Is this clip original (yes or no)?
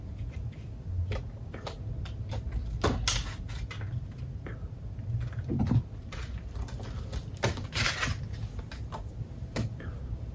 yes